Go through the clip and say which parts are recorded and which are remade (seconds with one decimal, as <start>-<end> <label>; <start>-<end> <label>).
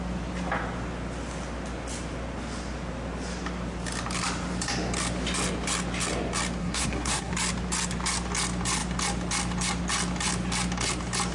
0.0-6.6 recorded; 6.6-7.3 remade; 7.3-11.3 recorded